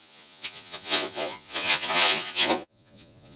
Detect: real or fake fake